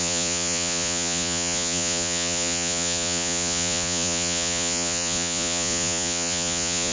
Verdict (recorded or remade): remade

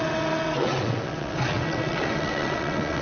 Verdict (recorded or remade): remade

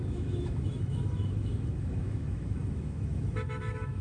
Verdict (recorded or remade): remade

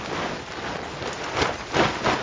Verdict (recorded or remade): recorded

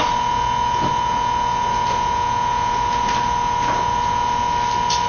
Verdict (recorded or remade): recorded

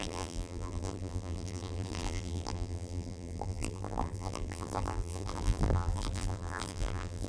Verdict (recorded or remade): remade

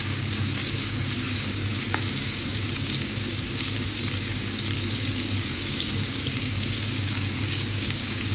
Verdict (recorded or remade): remade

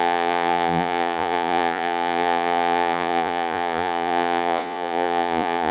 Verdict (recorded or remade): remade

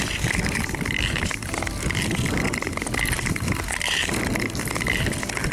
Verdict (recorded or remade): recorded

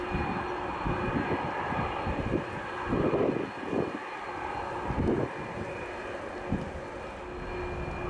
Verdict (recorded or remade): recorded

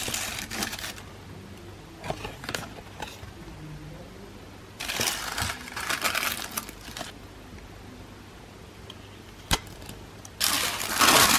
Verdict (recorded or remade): recorded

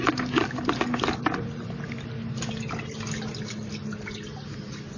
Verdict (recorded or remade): recorded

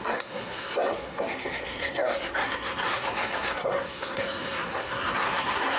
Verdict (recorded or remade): remade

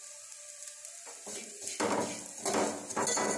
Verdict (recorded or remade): recorded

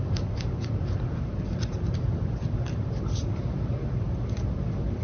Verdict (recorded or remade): recorded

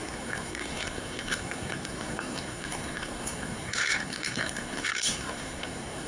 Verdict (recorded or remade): remade